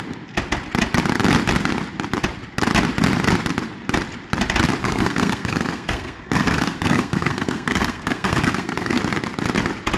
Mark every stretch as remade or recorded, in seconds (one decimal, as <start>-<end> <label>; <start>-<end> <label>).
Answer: 0.0-4.8 recorded; 4.8-9.0 remade; 9.0-10.0 recorded